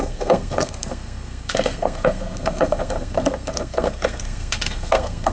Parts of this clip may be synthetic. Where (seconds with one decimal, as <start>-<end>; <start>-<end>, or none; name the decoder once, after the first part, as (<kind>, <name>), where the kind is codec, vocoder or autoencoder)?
0.0-5.3 (codec, SNAC)